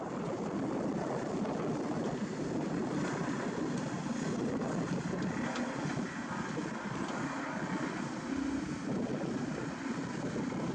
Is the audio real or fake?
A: real